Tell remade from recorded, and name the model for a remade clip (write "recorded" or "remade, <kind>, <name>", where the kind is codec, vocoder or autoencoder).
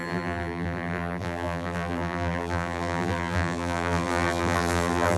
remade, vocoder, BigVGAN v2